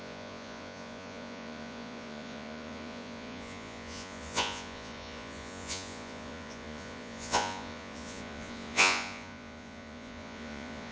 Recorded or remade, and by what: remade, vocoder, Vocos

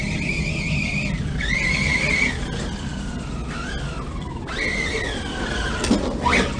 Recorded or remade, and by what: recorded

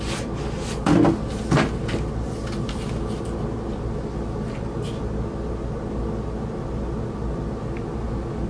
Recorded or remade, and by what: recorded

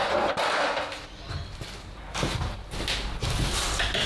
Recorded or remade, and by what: recorded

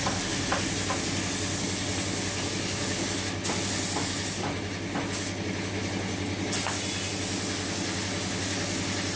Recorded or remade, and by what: recorded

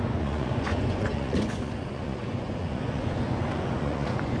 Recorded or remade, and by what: remade, vocoder, Vocos